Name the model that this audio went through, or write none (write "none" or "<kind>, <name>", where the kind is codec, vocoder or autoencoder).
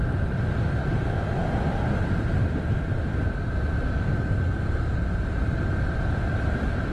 none